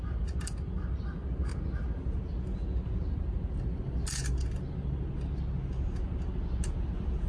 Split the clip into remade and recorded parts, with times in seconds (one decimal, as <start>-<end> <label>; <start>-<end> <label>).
0.0-7.3 recorded